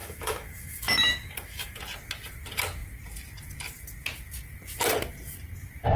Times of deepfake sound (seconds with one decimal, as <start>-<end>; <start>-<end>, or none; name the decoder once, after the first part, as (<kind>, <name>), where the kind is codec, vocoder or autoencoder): 0.0-1.8 (autoencoder, DAC-VAE)